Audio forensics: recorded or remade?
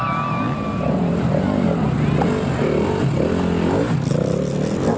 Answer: recorded